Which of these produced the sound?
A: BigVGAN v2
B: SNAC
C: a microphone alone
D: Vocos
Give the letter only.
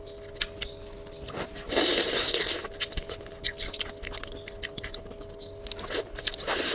C